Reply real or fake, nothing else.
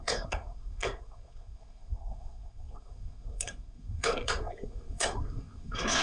fake